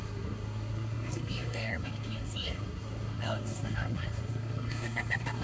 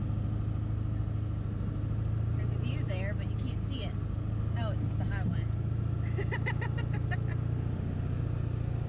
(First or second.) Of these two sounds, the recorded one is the second